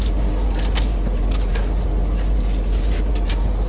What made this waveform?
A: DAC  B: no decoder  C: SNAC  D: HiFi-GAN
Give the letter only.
B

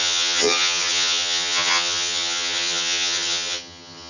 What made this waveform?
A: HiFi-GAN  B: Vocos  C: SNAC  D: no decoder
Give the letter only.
A